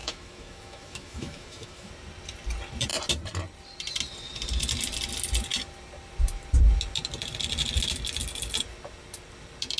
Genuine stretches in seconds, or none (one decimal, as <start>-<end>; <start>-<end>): 1.9-9.8